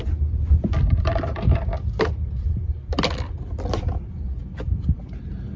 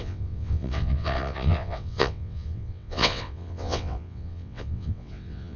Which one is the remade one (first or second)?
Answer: second